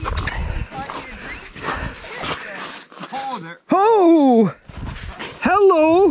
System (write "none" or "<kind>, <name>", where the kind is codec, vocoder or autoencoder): none